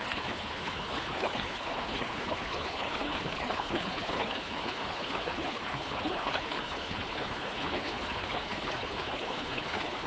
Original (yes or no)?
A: no